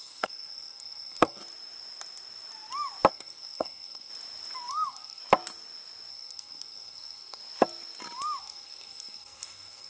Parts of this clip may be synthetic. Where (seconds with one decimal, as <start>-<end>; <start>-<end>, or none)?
0.0-1.4; 3.1-4.1; 4.7-5.2; 6.1-7.4; 8.4-9.9